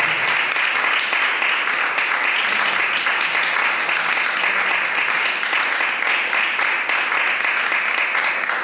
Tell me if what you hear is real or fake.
real